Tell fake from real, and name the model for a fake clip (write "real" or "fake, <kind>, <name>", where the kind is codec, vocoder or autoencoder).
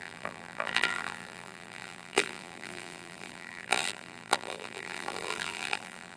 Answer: fake, vocoder, BigVGAN v2